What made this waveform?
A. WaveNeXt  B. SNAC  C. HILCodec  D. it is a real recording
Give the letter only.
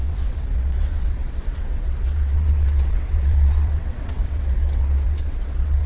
A